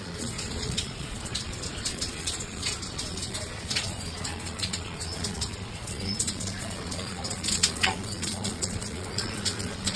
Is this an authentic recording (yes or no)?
no